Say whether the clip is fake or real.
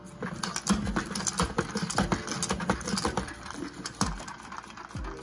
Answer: real